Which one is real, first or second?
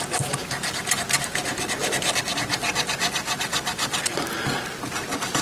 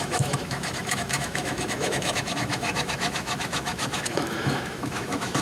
first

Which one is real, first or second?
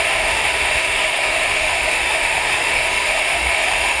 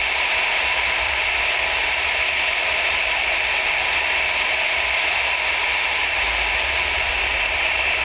second